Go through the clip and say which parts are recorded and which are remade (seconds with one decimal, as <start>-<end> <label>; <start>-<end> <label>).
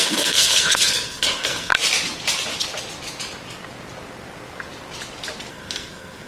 0.0-1.7 remade; 1.7-5.5 recorded; 5.5-6.3 remade